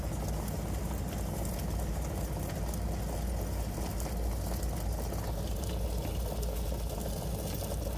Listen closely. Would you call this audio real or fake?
real